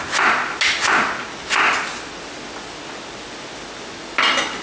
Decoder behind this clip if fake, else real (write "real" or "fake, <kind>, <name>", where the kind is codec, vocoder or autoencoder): real